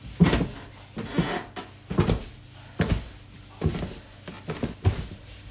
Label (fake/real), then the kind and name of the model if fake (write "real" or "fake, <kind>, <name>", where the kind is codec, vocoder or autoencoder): real